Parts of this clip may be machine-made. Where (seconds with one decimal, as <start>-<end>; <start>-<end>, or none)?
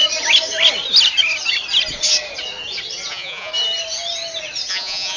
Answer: 3.1-3.5; 4.7-5.2